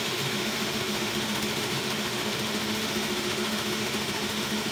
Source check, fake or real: fake